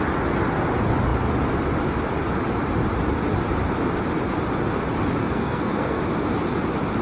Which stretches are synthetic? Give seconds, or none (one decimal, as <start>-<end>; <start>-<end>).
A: 5.2-6.0